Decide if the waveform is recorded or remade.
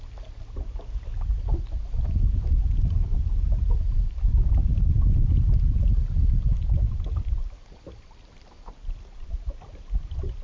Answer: recorded